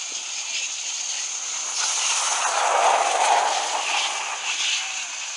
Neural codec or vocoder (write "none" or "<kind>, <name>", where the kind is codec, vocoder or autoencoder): none